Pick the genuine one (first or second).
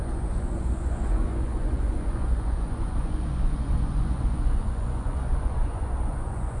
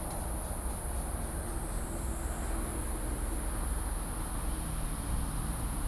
second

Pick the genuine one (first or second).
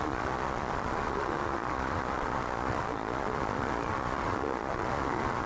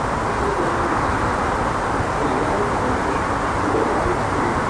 second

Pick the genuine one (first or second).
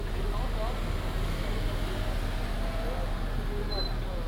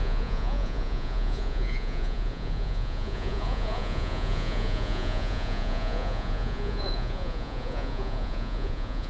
first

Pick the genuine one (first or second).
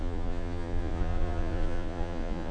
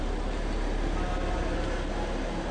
second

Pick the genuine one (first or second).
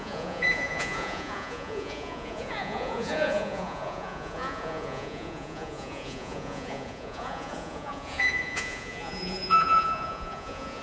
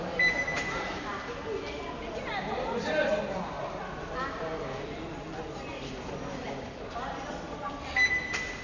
second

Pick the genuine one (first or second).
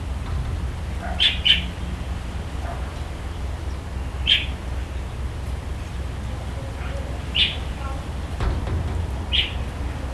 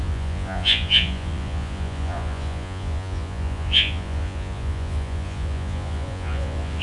first